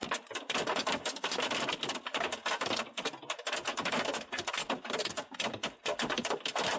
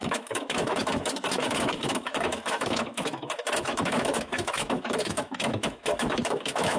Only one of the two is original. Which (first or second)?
first